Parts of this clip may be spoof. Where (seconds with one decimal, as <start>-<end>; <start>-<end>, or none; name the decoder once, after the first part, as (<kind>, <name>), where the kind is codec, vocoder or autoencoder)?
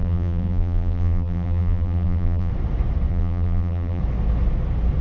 0.0-2.5 (vocoder, BigVGAN v2); 3.1-4.0